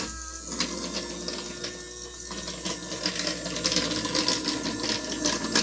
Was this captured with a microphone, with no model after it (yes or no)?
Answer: yes